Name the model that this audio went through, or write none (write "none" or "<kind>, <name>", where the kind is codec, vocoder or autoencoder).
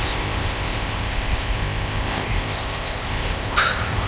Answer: codec, ZipCodec